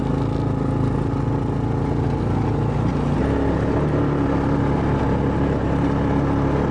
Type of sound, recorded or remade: recorded